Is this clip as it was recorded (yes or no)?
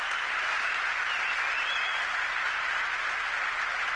yes